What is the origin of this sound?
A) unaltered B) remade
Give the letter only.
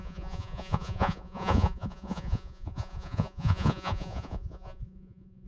B